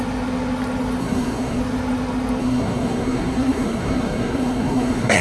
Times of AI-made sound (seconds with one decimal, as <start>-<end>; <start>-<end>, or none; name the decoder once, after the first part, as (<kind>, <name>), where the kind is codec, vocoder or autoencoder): 1.0-1.6 (codec, SNAC); 2.4-5.2